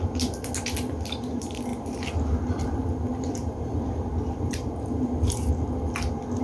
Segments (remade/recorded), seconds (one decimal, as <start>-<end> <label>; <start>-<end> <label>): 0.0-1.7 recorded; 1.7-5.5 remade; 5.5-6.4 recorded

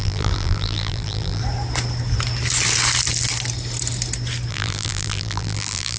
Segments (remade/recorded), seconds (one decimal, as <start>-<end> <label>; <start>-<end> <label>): 0.0-1.4 remade; 1.4-4.5 recorded; 4.5-6.0 remade

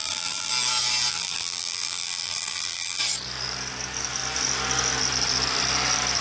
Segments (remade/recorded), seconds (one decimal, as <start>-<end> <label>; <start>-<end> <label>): 0.0-0.5 remade; 0.5-1.1 recorded; 1.1-3.0 remade; 3.0-6.2 recorded

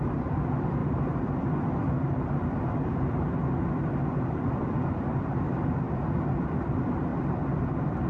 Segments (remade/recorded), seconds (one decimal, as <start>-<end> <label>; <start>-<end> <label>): 0.0-8.1 remade

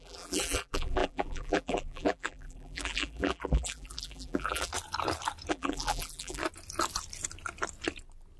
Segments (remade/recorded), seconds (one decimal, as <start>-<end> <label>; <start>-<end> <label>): 0.0-4.7 remade; 4.7-5.5 recorded; 5.5-6.4 remade; 6.4-8.4 recorded

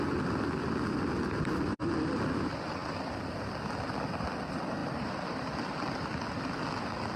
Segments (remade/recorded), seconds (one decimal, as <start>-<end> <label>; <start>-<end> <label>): 0.0-7.2 recorded

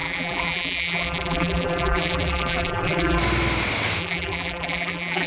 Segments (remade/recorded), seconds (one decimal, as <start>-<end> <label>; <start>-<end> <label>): 0.0-3.2 remade; 3.2-4.0 recorded; 4.0-5.3 remade